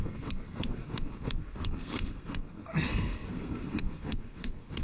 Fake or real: fake